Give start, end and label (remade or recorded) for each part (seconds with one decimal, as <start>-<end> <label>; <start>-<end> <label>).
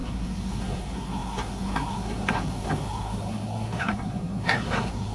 0.0-5.1 remade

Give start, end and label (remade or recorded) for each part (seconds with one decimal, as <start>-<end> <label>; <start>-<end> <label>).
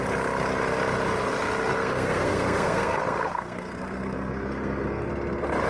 0.0-1.7 recorded; 1.7-5.1 remade; 5.1-5.7 recorded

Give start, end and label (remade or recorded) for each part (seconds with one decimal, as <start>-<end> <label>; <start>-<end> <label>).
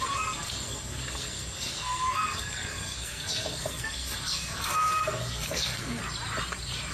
0.0-6.0 remade; 6.0-6.9 recorded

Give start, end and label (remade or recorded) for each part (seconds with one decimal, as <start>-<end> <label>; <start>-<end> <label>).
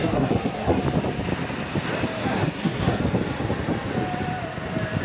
0.0-0.8 remade; 0.8-2.3 recorded; 2.3-3.0 remade; 3.0-5.0 recorded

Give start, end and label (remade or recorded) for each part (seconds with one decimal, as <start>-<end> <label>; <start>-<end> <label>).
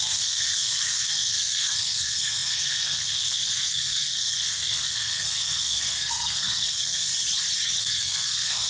0.0-7.1 remade; 7.1-7.8 recorded; 7.8-8.7 remade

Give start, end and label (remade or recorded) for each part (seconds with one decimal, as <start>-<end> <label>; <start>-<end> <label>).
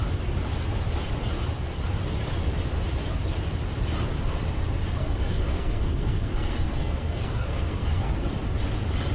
0.0-5.0 recorded; 5.0-8.3 remade; 8.3-9.1 recorded